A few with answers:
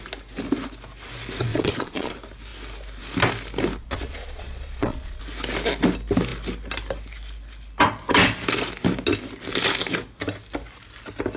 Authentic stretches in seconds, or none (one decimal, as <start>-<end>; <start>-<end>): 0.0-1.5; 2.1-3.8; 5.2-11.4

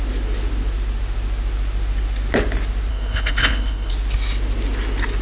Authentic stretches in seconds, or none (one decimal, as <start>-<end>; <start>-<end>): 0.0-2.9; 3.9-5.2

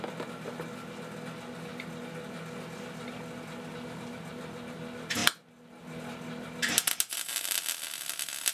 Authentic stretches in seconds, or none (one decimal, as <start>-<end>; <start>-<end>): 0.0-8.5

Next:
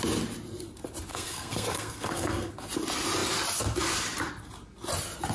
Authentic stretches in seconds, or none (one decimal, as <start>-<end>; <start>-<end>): 0.0-1.1; 2.5-5.3

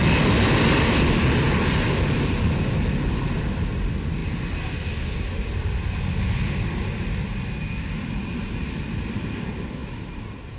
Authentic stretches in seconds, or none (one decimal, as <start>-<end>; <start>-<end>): 0.0-10.6